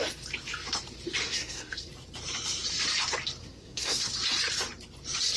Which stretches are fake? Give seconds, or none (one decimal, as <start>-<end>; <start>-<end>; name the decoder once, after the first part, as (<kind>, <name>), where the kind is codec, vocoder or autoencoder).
1.2-1.9 (codec, SNAC); 3.4-4.1